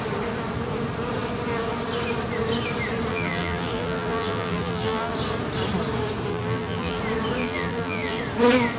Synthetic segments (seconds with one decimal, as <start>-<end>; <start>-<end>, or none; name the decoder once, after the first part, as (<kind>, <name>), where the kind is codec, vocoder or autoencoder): 3.1-5.1 (vocoder, BigVGAN v2); 6.3-7.0; 7.4-8.2